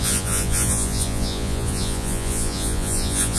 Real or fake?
fake